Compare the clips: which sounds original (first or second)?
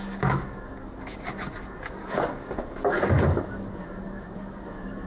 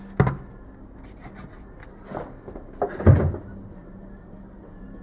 second